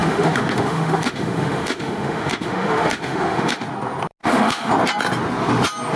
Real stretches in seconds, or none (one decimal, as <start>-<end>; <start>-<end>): 3.6-4.2; 4.7-6.0